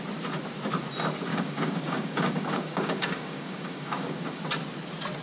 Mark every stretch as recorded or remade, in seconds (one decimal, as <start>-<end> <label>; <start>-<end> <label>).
0.0-1.3 recorded; 1.3-4.4 remade; 4.4-5.2 recorded